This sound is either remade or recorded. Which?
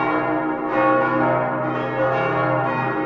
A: recorded